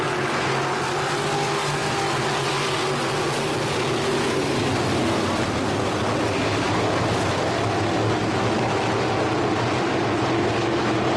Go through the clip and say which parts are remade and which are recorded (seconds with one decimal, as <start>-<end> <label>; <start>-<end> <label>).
0.0-11.2 recorded